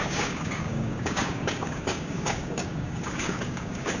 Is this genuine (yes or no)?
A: no